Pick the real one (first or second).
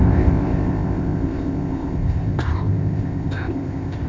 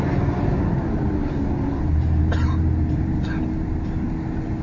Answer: second